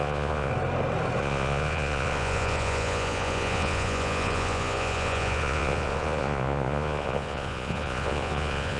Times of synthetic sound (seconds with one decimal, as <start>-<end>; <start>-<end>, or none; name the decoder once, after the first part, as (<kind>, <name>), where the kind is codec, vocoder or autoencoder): 0.0-0.5 (vocoder, Vocos); 1.2-8.8